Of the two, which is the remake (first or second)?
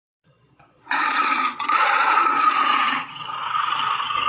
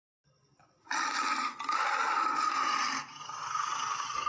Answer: first